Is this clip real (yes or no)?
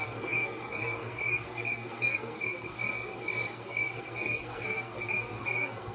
no